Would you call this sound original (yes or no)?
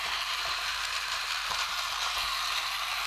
no